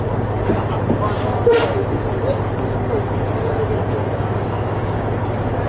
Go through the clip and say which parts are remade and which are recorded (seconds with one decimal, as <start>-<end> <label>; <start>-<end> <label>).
0.0-4.0 recorded; 4.0-5.0 remade; 5.0-5.7 recorded